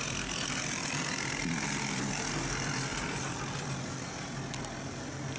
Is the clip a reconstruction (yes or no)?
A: no